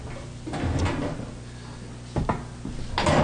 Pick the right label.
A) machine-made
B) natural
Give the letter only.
B